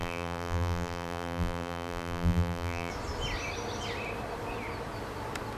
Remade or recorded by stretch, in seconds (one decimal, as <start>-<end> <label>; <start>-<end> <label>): 0.0-2.9 remade; 2.9-5.6 recorded